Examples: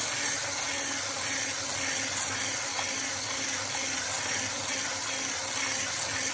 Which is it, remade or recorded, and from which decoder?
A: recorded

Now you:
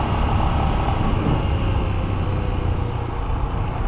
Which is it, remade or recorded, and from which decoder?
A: recorded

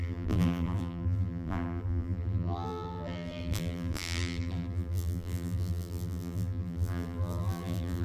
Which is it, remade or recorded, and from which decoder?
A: remade, vocoder, BigVGAN v2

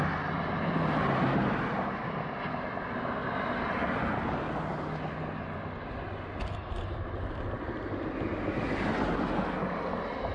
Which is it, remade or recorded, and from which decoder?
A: recorded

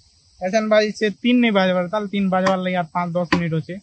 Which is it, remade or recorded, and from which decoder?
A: recorded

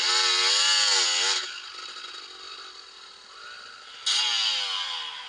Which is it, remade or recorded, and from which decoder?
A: recorded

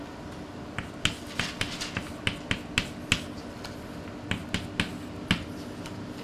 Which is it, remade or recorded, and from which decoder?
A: recorded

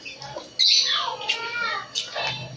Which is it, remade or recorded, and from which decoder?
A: recorded